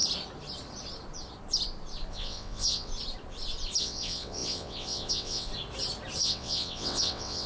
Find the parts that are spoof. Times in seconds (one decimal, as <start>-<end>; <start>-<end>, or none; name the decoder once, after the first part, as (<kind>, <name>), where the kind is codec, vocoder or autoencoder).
2.1-2.9 (vocoder, WaveNeXt); 3.8-5.5; 6.2-7.5